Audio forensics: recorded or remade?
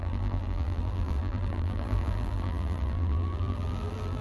remade